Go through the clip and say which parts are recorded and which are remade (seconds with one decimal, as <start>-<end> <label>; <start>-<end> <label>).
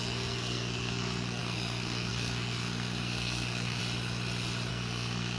0.0-3.8 remade; 3.8-4.7 recorded; 4.7-5.4 remade